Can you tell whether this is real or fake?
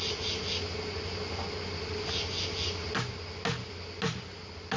real